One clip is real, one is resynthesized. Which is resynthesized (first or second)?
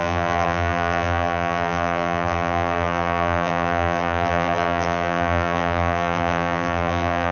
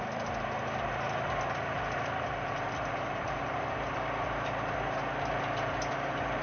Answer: first